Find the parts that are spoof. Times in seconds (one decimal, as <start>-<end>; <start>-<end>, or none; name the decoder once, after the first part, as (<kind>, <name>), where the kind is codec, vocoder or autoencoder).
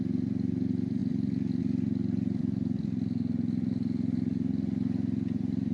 none